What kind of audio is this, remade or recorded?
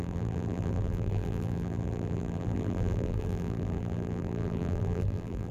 remade